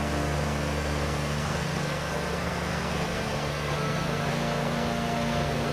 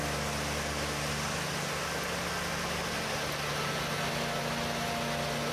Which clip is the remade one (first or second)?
first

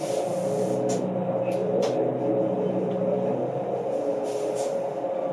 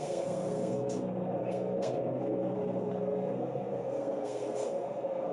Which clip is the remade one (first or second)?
second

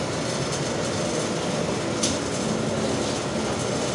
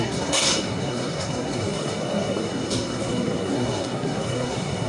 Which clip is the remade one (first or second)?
second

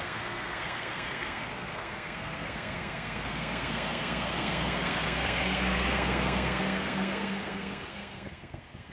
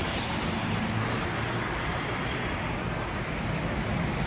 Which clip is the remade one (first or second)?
first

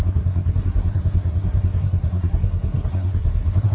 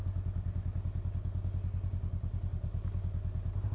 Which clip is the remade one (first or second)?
first